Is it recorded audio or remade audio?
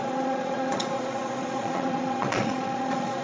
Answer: remade